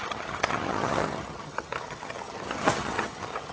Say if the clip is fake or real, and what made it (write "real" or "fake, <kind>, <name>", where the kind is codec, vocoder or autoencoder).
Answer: fake, vocoder, HiFi-GAN